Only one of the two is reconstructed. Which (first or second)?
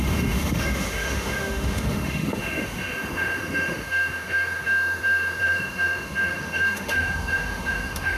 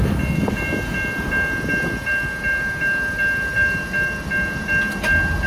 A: first